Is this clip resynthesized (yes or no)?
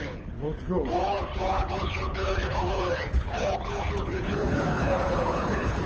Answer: yes